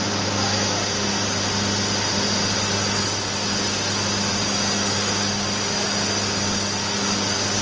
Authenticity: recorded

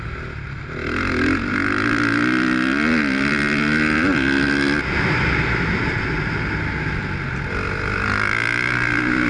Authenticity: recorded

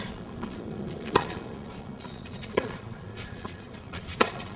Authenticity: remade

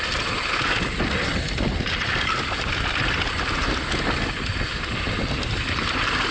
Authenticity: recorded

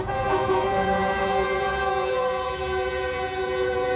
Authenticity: remade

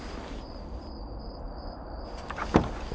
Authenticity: recorded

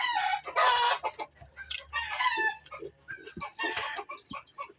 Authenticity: recorded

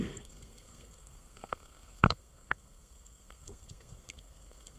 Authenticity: remade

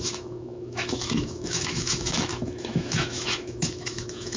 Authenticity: remade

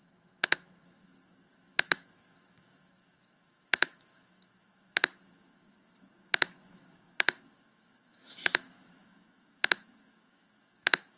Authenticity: remade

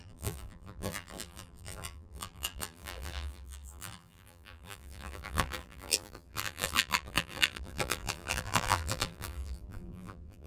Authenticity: remade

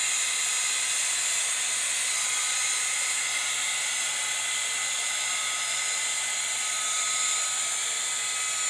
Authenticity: recorded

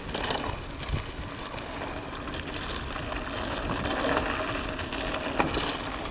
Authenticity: recorded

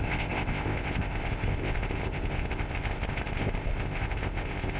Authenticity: remade